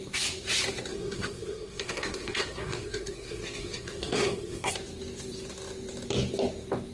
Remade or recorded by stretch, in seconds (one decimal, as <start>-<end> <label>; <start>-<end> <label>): 0.0-0.9 recorded; 0.9-4.7 remade; 4.7-6.9 recorded